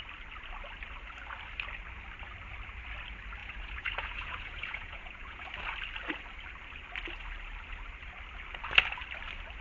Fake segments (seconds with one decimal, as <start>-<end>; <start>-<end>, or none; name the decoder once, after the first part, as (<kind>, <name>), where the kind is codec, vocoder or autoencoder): 3.4-5.4 (vocoder, Vocos)